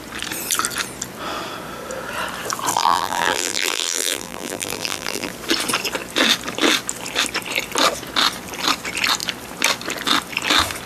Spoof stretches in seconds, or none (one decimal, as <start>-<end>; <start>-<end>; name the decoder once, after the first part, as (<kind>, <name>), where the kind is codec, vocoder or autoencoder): 2.7-5.3 (vocoder, BigVGAN v2)